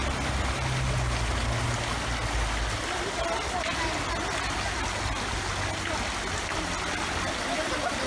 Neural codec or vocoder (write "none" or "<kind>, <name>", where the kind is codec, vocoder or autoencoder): none